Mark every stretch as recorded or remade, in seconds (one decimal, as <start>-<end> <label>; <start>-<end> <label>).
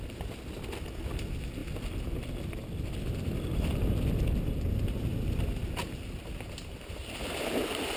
0.0-8.0 recorded